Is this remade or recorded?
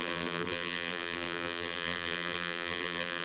remade